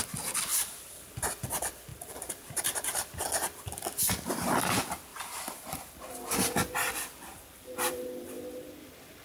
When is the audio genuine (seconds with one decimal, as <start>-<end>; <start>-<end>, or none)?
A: 0.0-0.5; 1.0-1.9; 3.1-5.1; 6.1-7.3; 8.3-9.2